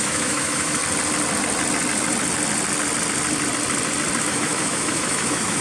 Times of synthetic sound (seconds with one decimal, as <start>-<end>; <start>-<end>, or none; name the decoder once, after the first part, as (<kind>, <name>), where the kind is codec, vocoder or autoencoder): 0.0-0.8 (autoencoder, DAC-VAE); 4.2-5.6